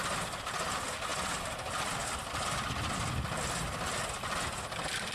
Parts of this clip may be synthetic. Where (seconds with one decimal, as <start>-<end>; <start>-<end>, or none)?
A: none